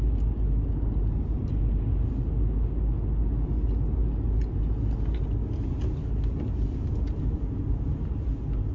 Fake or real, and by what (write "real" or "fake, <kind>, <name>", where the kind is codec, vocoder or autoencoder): real